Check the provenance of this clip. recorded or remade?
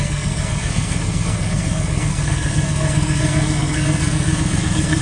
remade